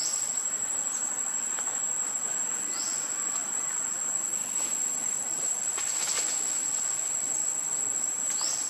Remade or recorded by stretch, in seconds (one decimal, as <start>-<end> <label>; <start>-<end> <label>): 0.0-3.4 recorded; 3.4-6.2 remade; 6.2-8.7 recorded